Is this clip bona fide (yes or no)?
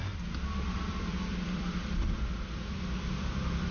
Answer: no